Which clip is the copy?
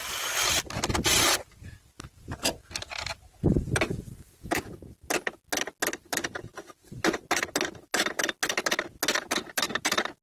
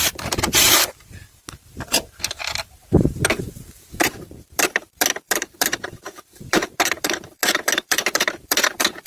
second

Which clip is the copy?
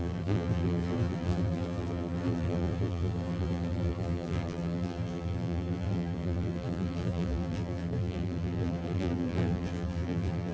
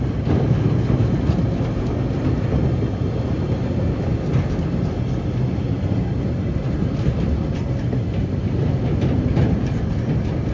first